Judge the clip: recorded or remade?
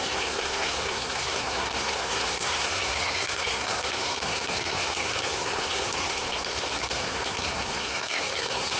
remade